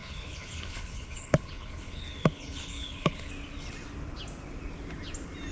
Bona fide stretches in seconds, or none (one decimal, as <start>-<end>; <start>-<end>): 3.3-5.5